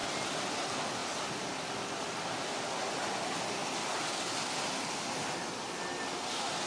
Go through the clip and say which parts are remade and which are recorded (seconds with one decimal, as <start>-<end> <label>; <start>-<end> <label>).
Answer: 0.0-6.7 recorded